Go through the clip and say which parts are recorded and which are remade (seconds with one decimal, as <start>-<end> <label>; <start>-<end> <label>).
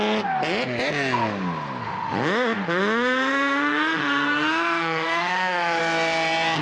0.0-1.8 recorded; 1.8-5.8 remade; 5.8-6.6 recorded